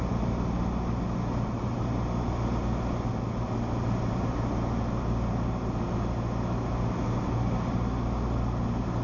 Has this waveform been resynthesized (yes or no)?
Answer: no